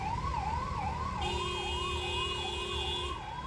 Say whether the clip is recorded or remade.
recorded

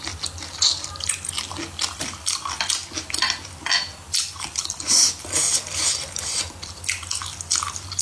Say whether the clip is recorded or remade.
recorded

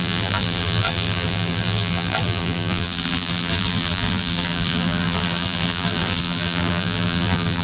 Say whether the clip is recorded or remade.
remade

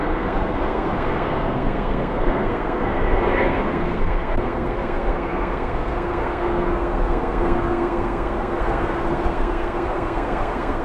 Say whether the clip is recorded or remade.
remade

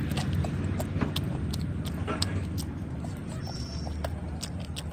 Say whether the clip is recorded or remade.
recorded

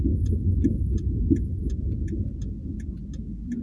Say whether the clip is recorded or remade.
recorded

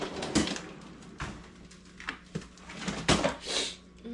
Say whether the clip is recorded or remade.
recorded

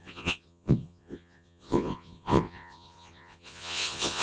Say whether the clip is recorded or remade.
remade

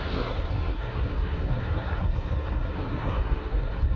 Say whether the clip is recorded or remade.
remade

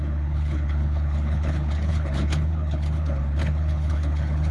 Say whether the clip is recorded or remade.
remade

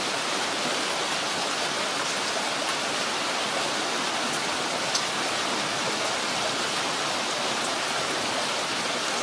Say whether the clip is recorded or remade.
recorded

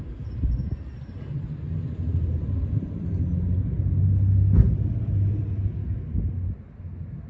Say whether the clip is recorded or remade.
recorded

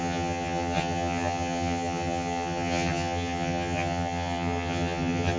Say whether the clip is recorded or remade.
remade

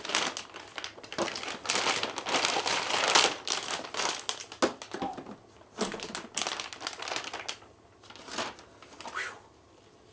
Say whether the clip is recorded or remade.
recorded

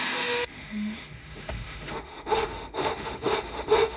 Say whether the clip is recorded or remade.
remade